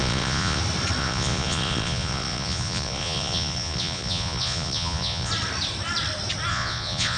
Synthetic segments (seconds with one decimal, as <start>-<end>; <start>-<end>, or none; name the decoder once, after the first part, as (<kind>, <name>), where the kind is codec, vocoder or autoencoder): 0.0-0.6 (vocoder, Vocos); 1.0-5.3; 6.5-7.2